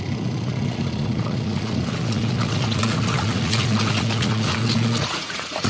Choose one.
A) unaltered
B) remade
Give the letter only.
B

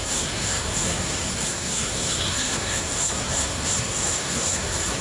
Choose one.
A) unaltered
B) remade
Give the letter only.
B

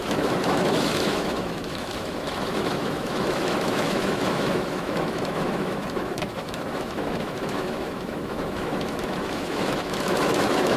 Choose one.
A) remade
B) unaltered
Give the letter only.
A